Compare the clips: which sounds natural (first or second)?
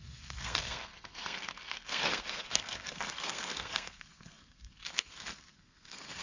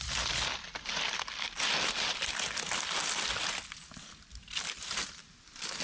second